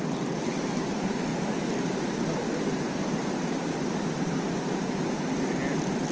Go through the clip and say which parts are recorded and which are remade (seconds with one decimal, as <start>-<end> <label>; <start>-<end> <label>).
0.0-6.1 recorded